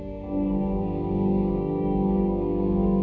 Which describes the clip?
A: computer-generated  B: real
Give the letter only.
A